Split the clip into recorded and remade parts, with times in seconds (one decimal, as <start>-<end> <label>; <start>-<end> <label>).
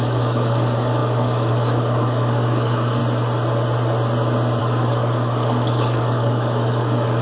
0.0-3.0 remade; 3.0-4.6 recorded; 4.6-7.2 remade